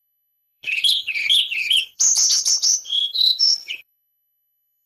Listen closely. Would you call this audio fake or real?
fake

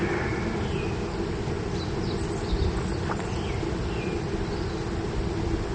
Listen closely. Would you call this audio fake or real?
real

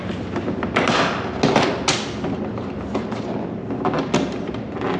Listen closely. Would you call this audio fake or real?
real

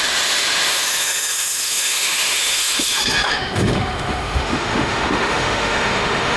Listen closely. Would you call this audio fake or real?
fake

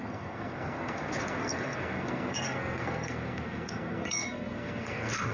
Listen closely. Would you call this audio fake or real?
fake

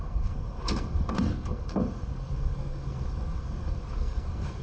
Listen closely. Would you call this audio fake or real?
fake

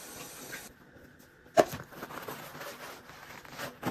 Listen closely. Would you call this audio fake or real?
real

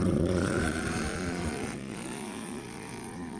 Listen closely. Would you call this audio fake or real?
fake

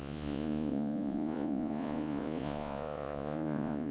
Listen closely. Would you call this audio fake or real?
fake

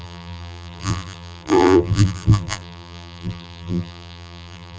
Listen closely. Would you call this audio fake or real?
fake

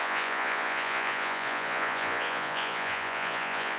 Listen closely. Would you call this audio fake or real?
fake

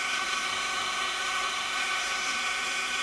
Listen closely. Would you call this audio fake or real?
fake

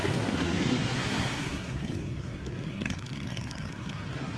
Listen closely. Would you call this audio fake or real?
fake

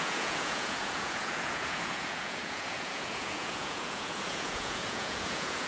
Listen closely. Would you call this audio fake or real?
fake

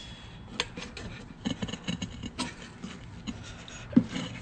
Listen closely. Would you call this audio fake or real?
real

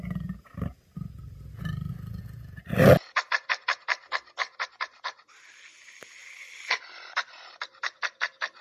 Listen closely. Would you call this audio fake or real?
real